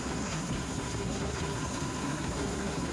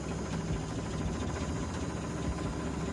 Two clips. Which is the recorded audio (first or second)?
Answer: second